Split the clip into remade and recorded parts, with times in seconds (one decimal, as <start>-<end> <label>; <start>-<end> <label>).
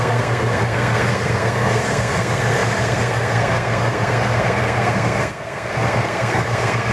0.0-6.9 remade